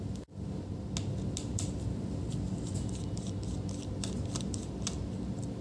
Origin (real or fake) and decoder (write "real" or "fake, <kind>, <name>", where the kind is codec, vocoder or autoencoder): real